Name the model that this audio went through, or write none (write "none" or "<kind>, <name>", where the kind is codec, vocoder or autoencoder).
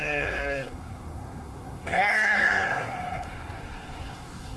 codec, SNAC